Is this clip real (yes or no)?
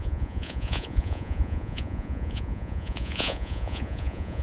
no